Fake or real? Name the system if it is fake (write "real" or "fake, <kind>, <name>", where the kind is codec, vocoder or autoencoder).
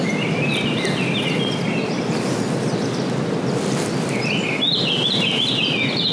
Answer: real